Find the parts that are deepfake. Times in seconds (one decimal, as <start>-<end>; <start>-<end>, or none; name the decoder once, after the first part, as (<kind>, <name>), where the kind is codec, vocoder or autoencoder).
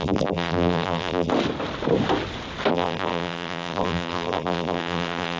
0.0-1.3 (vocoder, BigVGAN v2); 2.7-5.4